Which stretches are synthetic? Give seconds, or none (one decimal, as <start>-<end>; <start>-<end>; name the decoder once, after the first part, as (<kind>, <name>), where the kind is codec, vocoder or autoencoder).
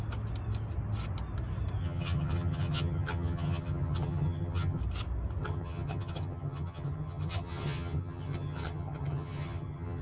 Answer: 1.8-4.8 (vocoder, HiFi-GAN); 5.4-10.0